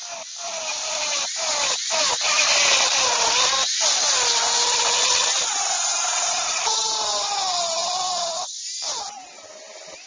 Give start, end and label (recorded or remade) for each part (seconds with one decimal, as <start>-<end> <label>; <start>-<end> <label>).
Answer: 0.0-0.7 recorded; 0.7-2.4 remade; 2.4-5.9 recorded; 5.9-10.1 remade